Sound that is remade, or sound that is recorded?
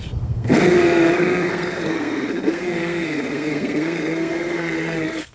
remade